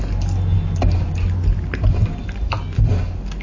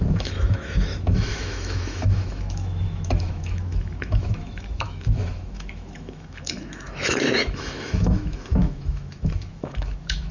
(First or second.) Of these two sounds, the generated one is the second